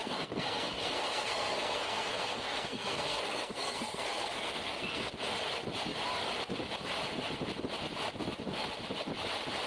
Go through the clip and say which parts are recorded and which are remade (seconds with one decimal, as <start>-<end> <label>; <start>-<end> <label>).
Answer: 0.0-5.1 remade; 5.1-9.7 recorded